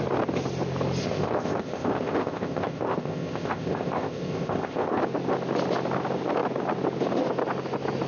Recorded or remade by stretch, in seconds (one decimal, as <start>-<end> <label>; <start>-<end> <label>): 0.0-1.0 recorded; 1.0-5.0 remade; 5.0-8.1 recorded